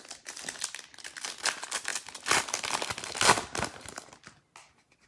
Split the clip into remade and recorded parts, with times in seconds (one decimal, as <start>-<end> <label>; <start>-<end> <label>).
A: 0.0-5.1 recorded